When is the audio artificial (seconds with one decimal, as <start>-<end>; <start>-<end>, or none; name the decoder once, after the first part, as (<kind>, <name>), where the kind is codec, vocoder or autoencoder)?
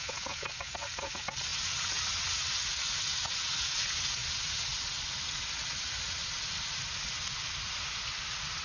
none